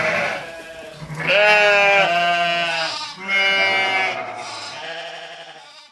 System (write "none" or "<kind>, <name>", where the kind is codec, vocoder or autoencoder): none